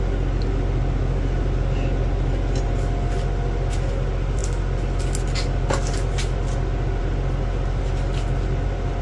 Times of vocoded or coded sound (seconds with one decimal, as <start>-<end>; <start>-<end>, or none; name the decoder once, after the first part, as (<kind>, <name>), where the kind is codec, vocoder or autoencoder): none